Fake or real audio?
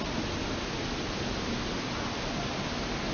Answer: real